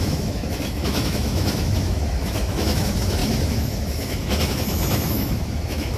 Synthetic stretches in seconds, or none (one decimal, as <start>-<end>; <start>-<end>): 0.0-6.0